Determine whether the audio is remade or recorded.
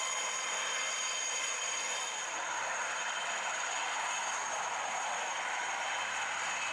recorded